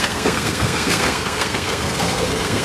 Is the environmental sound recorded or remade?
remade